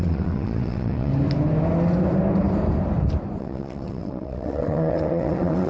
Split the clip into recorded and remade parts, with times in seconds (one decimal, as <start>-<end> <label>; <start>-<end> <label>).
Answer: 0.0-1.1 remade; 1.1-3.4 recorded; 3.4-5.7 remade